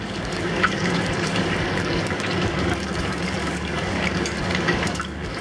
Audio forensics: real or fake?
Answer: fake